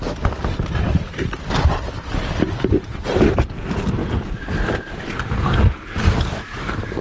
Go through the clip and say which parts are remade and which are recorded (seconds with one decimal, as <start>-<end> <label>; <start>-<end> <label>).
0.0-7.0 recorded